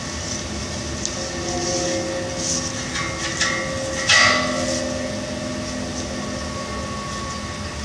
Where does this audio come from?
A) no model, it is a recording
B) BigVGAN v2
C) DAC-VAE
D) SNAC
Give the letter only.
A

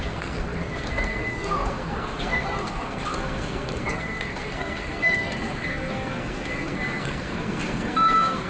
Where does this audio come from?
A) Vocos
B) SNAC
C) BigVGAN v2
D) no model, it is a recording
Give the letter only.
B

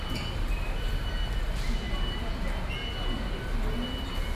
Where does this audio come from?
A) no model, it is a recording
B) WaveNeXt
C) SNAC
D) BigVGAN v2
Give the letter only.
A